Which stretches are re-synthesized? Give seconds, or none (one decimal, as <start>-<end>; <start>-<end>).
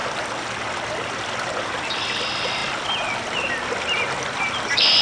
none